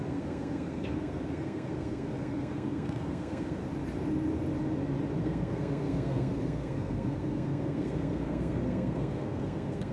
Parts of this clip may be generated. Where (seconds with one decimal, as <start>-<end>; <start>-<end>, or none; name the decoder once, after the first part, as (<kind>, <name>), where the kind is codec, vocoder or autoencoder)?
0.0-3.6 (codec, SNAC); 5.2-9.9